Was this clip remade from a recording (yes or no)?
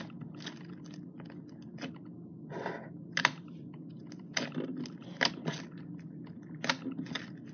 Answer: no